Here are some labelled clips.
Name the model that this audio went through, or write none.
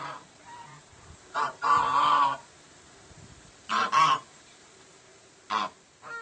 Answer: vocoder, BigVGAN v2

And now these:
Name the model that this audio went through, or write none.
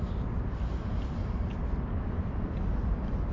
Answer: none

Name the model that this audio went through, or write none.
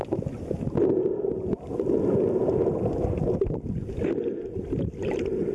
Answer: none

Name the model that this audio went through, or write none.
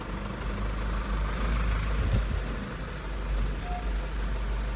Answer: none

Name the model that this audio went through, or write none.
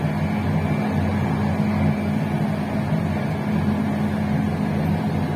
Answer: none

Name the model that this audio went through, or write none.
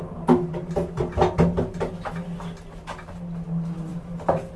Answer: none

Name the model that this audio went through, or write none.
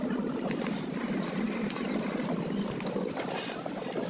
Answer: none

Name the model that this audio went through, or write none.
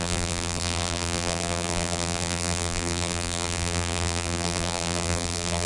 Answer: vocoder, BigVGAN v2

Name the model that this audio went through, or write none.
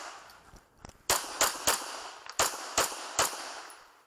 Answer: none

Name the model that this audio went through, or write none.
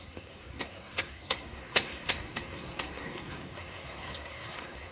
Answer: codec, SNAC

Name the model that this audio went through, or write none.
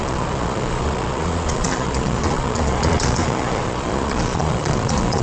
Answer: vocoder, Vocos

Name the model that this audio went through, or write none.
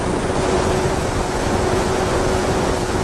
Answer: vocoder, Vocos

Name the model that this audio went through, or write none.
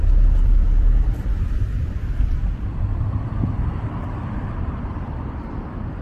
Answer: vocoder, BigVGAN v2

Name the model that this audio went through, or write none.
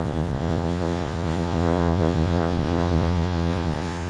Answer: vocoder, Vocos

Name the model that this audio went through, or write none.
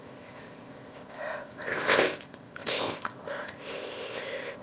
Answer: codec, ZipCodec